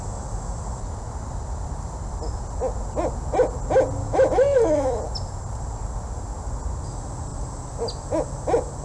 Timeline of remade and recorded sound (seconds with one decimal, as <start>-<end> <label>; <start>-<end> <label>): 0.0-4.0 recorded; 4.0-5.0 remade; 5.0-8.8 recorded